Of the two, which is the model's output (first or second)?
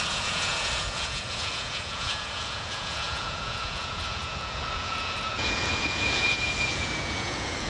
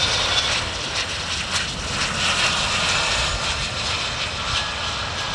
first